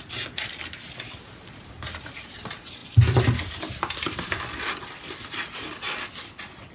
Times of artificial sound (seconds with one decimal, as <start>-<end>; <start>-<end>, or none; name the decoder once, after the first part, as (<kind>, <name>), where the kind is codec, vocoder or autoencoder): 2.8-5.4 (vocoder, BigVGAN v2)